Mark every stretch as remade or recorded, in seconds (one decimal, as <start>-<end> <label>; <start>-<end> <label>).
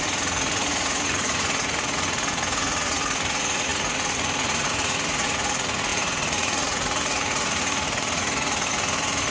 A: 0.0-9.3 remade